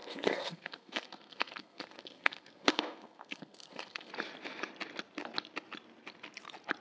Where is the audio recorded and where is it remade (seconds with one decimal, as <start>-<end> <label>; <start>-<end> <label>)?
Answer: 0.0-4.1 remade; 4.1-6.8 recorded